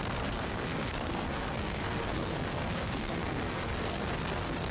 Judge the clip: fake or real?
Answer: fake